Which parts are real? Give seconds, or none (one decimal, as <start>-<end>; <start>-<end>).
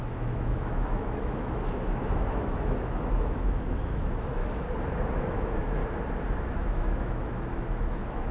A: 4.4-5.2; 5.8-6.4